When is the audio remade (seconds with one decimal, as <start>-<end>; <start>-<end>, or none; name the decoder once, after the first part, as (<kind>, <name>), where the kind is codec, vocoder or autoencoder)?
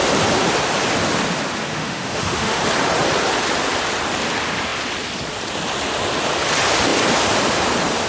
1.7-2.6 (autoencoder, DAC-VAE)